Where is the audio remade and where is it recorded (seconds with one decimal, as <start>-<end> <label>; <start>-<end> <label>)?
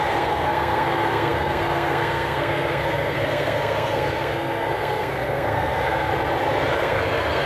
0.0-6.1 remade; 6.1-6.8 recorded; 6.8-7.5 remade